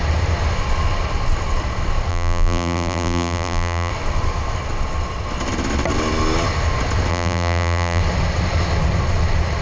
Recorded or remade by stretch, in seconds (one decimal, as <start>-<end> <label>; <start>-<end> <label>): 0.0-2.1 recorded; 2.1-3.9 remade; 3.9-7.1 recorded; 7.1-8.0 remade; 8.0-9.6 recorded